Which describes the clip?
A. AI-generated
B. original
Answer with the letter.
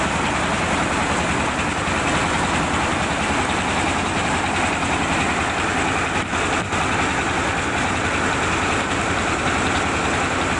B